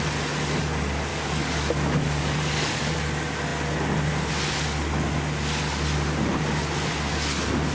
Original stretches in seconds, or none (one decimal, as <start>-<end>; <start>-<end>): 0.0-1.1; 2.8-7.7